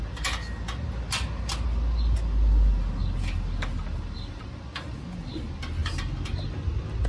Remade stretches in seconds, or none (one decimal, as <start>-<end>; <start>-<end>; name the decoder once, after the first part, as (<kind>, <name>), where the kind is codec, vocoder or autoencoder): none